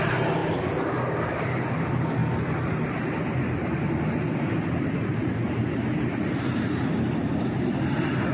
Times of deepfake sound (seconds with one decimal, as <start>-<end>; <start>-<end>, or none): none